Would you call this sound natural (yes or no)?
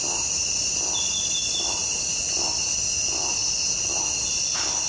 yes